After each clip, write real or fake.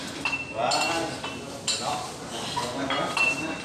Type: real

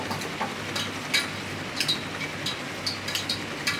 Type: real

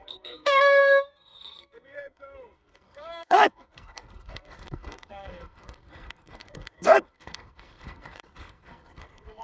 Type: fake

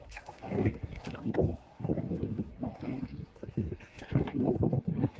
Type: fake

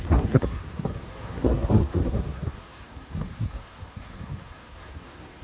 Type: fake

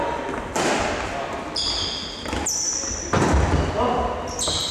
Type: real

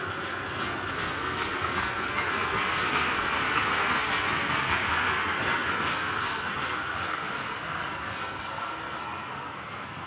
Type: fake